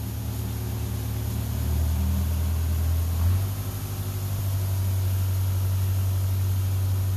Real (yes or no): yes